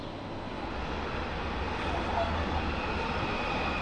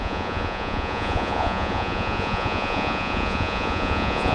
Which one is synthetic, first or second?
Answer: second